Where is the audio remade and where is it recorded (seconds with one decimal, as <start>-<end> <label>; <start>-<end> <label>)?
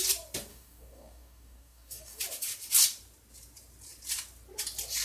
0.0-0.5 recorded; 0.5-2.2 remade; 2.2-5.0 recorded